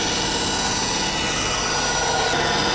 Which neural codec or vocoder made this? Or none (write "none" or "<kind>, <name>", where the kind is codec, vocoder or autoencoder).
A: none